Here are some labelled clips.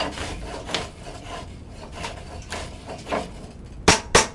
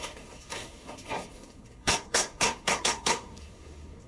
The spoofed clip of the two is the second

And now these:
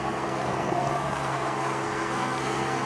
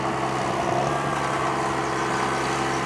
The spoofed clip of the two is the first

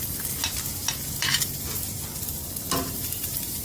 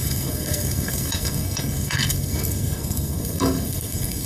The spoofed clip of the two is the second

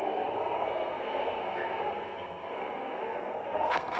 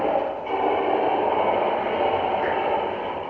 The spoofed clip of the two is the first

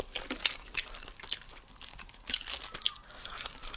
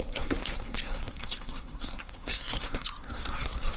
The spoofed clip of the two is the second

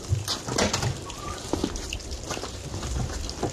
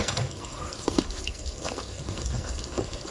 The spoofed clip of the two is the second